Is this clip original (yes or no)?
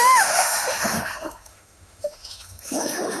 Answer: no